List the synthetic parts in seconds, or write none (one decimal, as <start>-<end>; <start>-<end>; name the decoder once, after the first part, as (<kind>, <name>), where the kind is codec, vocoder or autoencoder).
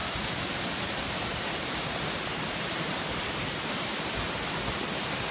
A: 0.0-1.4 (vocoder, BigVGAN v2); 2.4-4.8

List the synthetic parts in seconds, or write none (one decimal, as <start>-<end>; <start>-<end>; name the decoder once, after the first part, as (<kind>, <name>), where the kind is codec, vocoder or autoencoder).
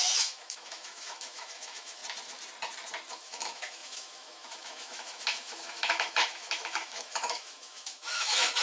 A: 0.0-2.0 (autoencoder, DAC-VAE); 3.1-8.6